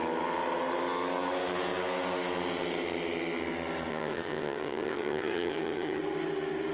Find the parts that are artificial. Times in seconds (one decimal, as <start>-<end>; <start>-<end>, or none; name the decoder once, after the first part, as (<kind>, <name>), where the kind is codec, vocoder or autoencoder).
3.9-6.0 (vocoder, HiFi-GAN)